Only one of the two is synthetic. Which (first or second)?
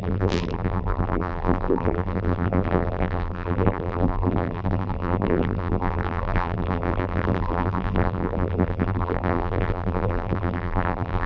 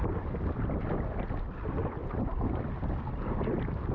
first